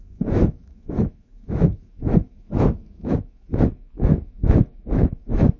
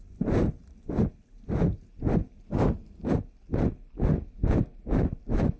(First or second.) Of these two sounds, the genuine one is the second